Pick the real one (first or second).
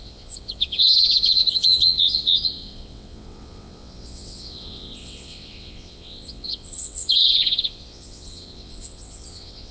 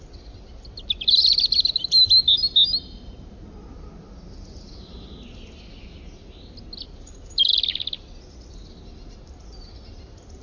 second